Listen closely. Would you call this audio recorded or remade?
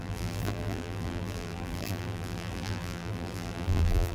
remade